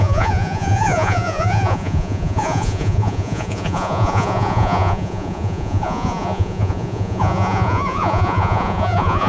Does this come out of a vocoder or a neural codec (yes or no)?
yes